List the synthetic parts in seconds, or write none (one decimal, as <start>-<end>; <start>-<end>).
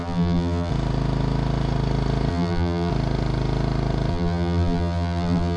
0.0-0.7; 2.3-2.9; 4.1-5.6